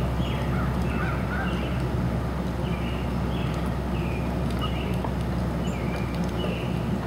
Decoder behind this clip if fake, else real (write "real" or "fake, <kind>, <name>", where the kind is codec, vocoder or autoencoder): real